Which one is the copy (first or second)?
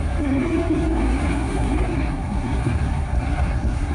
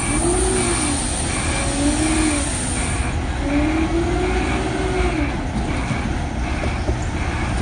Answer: first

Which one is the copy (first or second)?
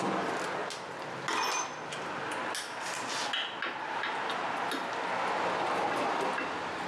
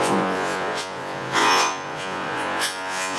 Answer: second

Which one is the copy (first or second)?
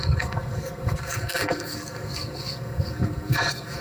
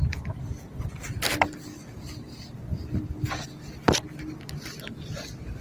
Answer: first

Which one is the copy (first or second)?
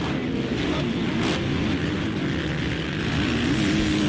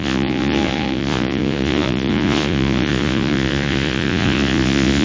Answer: second